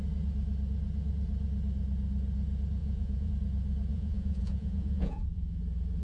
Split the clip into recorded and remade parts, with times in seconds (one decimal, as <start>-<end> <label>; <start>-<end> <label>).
0.0-2.8 recorded; 2.8-3.3 remade; 3.3-3.9 recorded; 3.9-5.6 remade; 5.6-6.0 recorded